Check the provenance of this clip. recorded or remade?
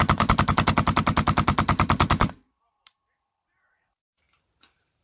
remade